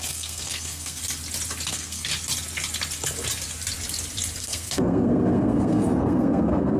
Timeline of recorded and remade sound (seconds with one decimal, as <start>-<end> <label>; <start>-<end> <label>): 0.0-1.0 remade; 1.0-1.7 recorded; 1.7-2.1 remade; 2.1-4.4 recorded; 4.4-6.8 remade